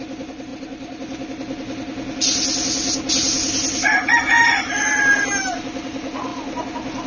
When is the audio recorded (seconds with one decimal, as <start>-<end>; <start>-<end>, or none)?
0.0-7.1